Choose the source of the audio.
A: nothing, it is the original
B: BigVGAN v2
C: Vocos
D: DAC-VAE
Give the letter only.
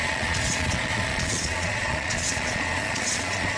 C